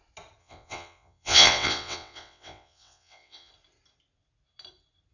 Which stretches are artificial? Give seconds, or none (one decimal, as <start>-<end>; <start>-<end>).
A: 0.4-3.5